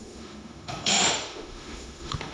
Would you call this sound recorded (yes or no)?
no